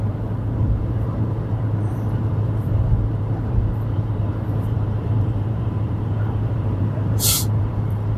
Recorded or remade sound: remade